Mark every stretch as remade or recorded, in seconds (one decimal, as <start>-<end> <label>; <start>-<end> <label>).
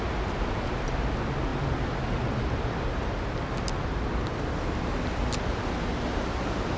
0.0-6.8 recorded